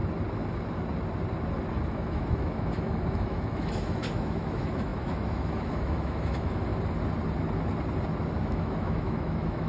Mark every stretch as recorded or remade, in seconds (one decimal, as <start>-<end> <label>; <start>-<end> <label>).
0.0-1.9 recorded; 1.9-6.7 remade; 6.7-8.4 recorded; 8.4-9.7 remade